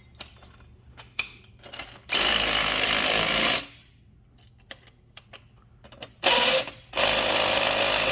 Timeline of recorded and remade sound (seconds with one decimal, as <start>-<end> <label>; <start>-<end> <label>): 0.0-0.9 recorded; 0.9-1.4 remade; 1.4-8.1 recorded